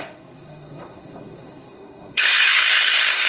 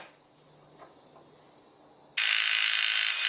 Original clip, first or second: second